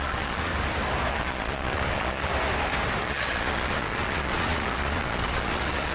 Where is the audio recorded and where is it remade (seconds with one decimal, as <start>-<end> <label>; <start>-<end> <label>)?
0.0-0.5 remade; 0.5-1.1 recorded; 1.1-2.3 remade; 2.3-3.0 recorded; 3.0-5.9 remade